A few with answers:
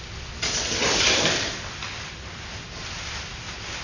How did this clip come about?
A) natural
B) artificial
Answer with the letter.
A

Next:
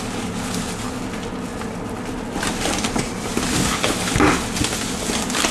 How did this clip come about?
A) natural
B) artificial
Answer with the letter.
A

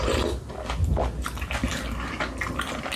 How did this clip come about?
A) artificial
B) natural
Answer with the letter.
B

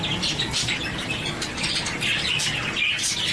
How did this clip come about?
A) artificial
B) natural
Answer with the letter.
B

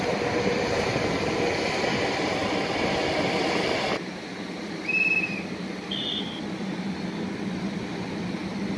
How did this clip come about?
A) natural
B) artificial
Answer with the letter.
A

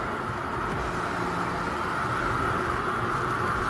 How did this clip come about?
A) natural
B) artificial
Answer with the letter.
A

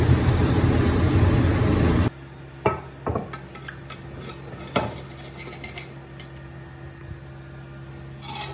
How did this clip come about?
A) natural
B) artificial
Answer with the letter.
A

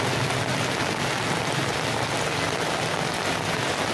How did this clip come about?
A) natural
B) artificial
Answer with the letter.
A